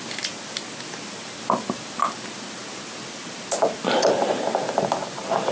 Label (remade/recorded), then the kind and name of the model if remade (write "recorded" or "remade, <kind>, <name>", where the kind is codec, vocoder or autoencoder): recorded